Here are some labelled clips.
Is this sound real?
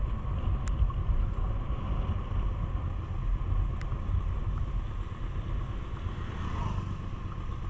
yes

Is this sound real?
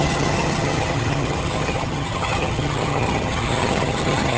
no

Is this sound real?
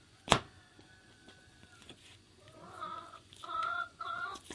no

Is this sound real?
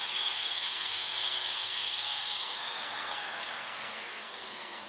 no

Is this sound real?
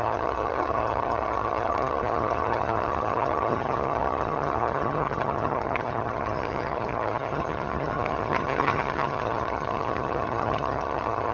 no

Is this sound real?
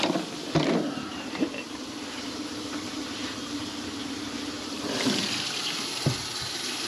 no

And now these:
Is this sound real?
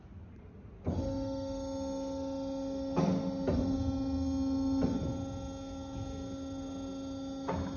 yes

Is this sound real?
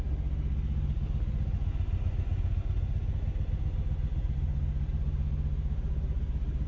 yes